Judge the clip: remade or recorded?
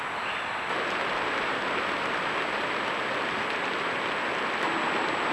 recorded